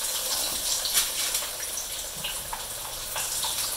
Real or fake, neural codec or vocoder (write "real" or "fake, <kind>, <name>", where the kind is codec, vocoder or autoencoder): real